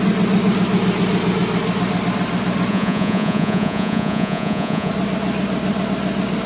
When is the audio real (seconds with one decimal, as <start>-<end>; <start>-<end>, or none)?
0.0-2.7; 4.9-6.5